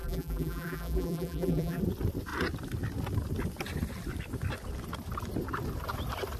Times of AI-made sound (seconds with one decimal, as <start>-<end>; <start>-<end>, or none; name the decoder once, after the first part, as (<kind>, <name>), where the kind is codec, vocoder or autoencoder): 0.0-1.8 (vocoder, BigVGAN v2)